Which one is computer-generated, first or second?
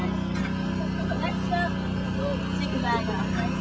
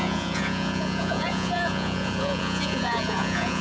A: second